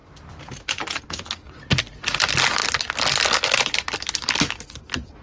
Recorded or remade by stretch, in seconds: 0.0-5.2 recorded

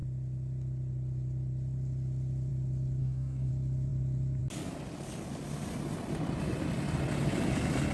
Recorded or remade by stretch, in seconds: 0.0-3.0 recorded; 3.0-3.5 remade; 3.5-7.9 recorded

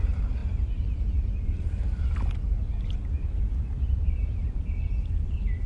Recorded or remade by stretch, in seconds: 0.0-0.4 remade; 0.4-3.8 recorded; 3.8-5.7 remade

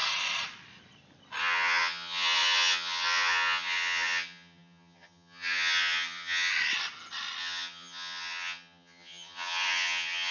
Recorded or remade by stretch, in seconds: 0.0-1.4 recorded; 1.4-6.5 remade; 6.5-7.4 recorded; 7.4-10.3 remade

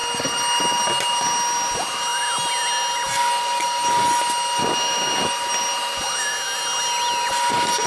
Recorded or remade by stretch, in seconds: 0.0-7.9 recorded